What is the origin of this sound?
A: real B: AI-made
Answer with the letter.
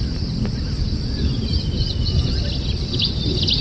A